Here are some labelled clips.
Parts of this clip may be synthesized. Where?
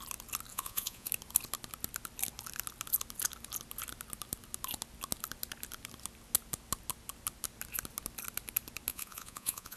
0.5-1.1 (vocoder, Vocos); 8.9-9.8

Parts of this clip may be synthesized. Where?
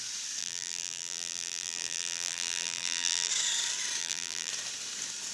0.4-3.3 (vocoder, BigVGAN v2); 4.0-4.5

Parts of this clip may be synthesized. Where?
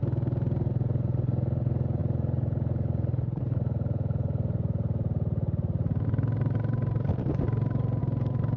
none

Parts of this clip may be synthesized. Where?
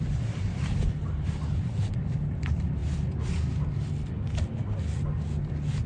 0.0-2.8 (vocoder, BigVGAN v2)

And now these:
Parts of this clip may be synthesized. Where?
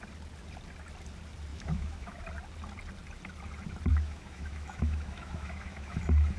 1.5-2.2 (autoencoder, DAC-VAE); 3.9-6.4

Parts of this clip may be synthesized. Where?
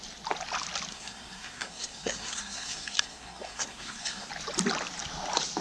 0.9-4.3 (codec, SNAC)